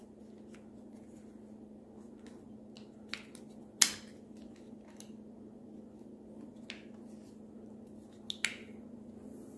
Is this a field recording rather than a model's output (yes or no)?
yes